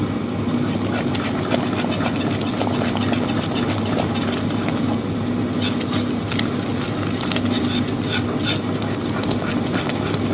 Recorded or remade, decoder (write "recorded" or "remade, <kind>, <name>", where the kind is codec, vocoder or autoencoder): recorded